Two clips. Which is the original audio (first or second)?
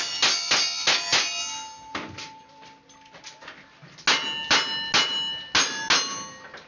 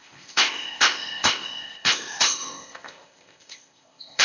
first